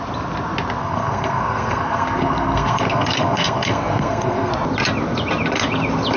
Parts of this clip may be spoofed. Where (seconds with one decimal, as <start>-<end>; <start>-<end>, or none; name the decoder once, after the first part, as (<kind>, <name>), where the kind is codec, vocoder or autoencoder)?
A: 0.8-4.5 (codec, SNAC)